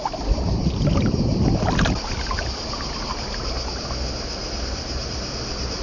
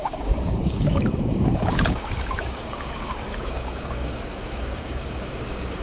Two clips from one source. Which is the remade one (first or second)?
second